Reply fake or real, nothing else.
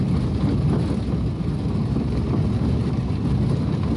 real